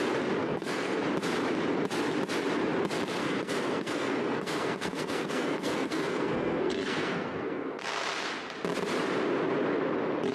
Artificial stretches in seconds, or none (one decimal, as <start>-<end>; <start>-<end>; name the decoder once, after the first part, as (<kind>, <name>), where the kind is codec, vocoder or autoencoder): 0.4-1.0 (codec, SNAC); 3.2-7.9